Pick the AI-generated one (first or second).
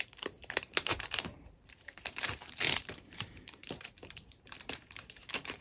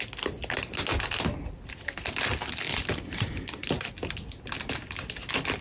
first